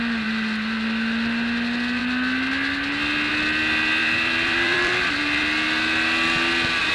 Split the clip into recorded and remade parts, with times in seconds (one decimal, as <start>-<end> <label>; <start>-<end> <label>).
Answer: 0.0-4.0 recorded; 4.0-5.4 remade; 5.4-6.9 recorded